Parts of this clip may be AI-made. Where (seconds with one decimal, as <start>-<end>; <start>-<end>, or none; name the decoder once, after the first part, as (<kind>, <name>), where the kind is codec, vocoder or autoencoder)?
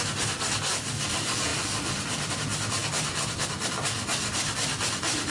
1.5-2.3 (vocoder, BigVGAN v2); 2.8-3.4